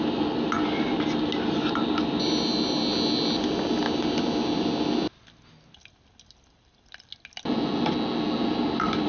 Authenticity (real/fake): real